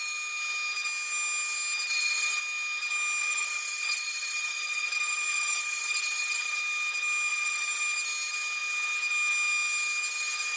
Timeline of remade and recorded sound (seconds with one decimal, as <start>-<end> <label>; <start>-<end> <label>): 0.0-1.9 recorded; 1.9-2.4 remade; 2.4-3.2 recorded; 3.2-6.6 remade; 6.6-7.3 recorded; 7.3-7.8 remade; 7.8-10.6 recorded